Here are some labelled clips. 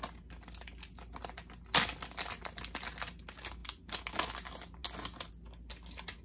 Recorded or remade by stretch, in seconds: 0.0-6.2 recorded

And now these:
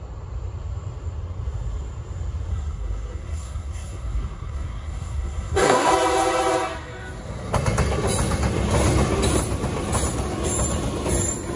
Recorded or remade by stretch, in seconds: 0.0-2.5 recorded; 2.5-5.9 remade; 5.9-11.6 recorded

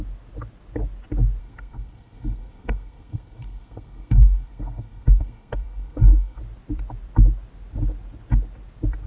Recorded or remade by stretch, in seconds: 0.0-1.4 recorded; 1.4-6.4 remade; 6.4-9.1 recorded